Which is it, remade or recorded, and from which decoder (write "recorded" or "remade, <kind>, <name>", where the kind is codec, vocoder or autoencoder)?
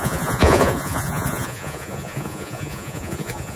remade, vocoder, Vocos